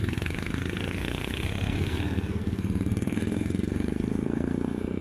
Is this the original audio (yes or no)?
no